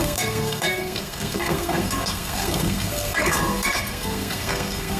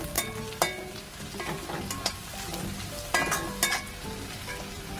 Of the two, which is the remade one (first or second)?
first